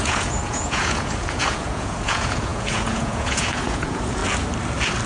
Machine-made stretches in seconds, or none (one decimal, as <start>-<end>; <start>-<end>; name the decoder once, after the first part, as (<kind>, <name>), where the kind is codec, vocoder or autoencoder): 0.0-4.2 (vocoder, Vocos)